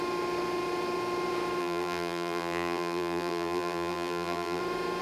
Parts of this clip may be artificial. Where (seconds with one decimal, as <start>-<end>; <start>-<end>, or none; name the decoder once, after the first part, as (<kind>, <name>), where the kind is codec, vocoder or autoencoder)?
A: 1.6-4.6 (vocoder, BigVGAN v2)